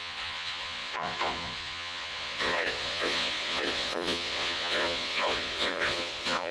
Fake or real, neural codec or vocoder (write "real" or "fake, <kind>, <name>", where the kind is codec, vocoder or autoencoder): fake, vocoder, Vocos